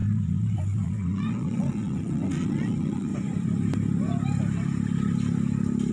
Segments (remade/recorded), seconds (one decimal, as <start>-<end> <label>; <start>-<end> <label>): 0.0-3.1 remade; 3.1-5.9 recorded

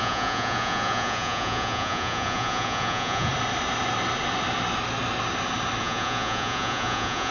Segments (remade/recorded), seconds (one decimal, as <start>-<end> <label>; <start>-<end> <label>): 0.0-3.3 remade; 3.3-5.8 recorded; 5.8-7.3 remade

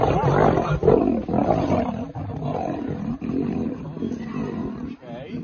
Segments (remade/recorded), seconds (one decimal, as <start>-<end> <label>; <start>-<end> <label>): 0.0-5.4 recorded

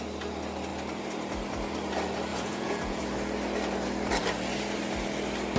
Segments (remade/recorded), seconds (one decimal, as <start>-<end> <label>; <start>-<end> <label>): 0.0-2.3 recorded; 2.3-3.0 remade; 3.0-5.6 recorded

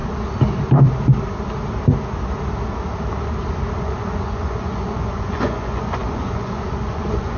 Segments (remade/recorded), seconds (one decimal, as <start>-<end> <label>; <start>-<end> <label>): 0.0-3.8 recorded; 3.8-7.4 remade